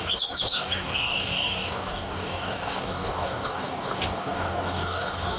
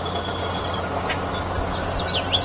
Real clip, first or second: second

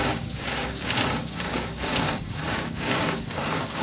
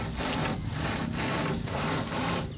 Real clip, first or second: second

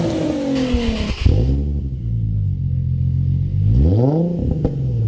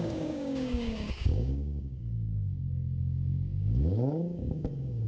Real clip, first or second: first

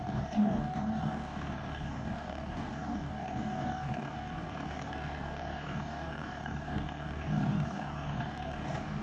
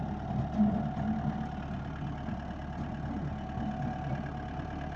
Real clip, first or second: second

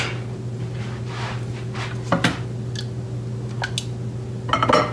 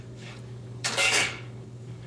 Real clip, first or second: first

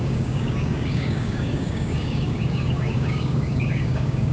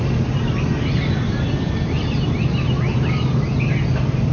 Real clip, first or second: second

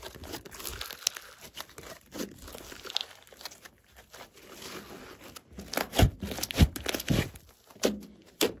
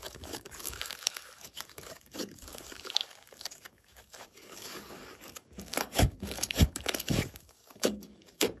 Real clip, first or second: first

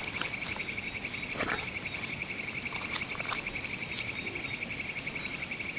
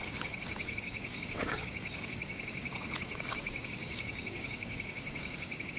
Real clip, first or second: first